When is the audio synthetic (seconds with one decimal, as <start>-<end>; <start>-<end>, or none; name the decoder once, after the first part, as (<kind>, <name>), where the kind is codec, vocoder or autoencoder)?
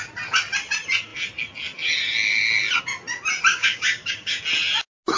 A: 3.5-4.4 (codec, DAC)